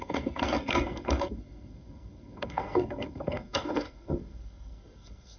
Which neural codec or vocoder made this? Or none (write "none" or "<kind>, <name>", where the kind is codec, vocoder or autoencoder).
codec, SNAC